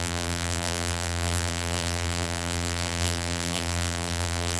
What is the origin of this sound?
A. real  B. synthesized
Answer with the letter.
B